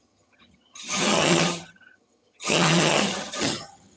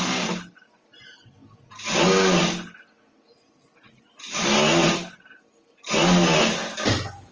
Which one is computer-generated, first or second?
first